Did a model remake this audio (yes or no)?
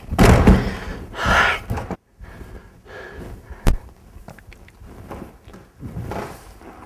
no